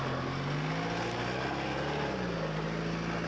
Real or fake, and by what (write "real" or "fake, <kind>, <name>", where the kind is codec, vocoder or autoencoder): real